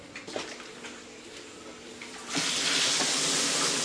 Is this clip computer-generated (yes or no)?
no